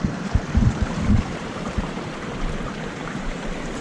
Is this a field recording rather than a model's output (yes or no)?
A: no